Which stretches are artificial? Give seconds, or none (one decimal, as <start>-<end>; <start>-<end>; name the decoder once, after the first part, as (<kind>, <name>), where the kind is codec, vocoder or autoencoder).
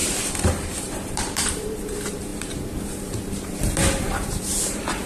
0.0-5.1 (vocoder, BigVGAN v2)